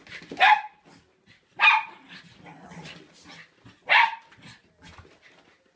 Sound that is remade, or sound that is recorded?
recorded